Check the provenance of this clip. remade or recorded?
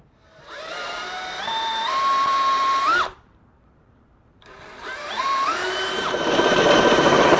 remade